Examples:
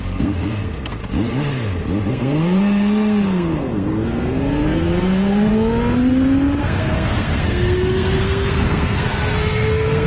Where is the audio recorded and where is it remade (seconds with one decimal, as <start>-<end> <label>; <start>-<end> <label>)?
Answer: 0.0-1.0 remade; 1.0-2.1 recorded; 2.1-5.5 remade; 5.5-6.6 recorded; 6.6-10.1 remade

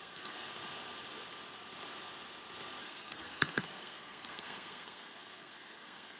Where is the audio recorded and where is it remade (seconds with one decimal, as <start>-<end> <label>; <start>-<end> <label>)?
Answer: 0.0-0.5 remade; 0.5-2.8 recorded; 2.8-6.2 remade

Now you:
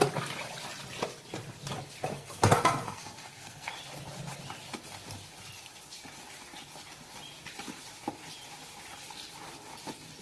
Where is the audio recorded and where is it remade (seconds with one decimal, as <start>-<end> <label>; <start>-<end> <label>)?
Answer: 0.0-2.1 recorded; 2.1-3.7 remade; 3.7-10.2 recorded